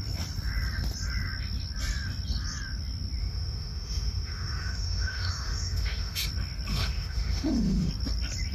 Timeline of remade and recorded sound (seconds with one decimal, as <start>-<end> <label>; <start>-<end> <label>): 0.0-3.2 recorded; 3.2-6.3 remade; 6.3-6.7 recorded; 6.7-7.9 remade; 7.9-8.5 recorded